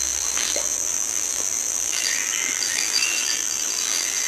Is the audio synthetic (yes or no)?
yes